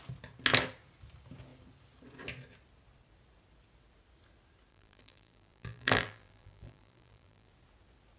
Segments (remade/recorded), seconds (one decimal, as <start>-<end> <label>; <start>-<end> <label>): 0.0-4.7 recorded; 4.7-7.5 remade; 7.5-8.2 recorded

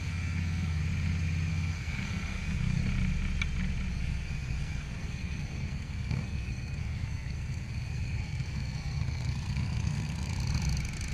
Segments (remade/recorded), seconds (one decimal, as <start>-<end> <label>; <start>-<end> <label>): 0.0-0.8 remade; 0.8-1.5 recorded; 1.5-2.8 remade; 2.8-3.9 recorded; 3.9-10.3 remade; 10.3-11.1 recorded

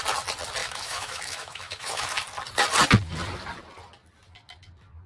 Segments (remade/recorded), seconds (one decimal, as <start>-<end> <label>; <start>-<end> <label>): 0.0-0.6 recorded; 0.6-2.1 remade; 2.1-5.1 recorded

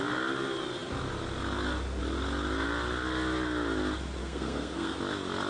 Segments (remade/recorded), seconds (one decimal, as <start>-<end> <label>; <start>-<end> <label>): 0.0-4.2 recorded; 4.2-5.0 remade; 5.0-5.5 recorded

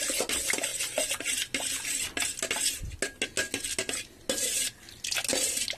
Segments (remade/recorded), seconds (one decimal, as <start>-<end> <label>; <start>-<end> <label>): 0.0-5.8 recorded

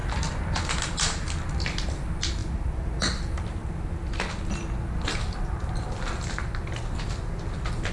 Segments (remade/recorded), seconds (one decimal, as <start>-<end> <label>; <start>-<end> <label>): 0.0-7.9 recorded